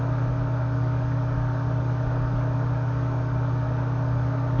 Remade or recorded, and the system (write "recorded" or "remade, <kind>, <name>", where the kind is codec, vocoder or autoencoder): remade, codec, DAC